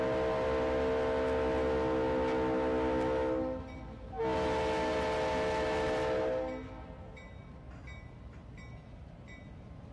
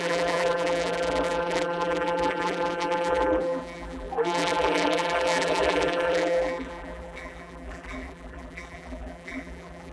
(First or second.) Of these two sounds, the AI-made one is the second